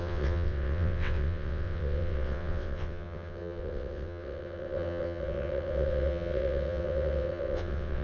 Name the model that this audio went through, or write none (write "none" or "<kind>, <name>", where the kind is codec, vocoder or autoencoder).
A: vocoder, WaveNeXt